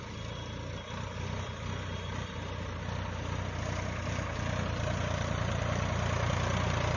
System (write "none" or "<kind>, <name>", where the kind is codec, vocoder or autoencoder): none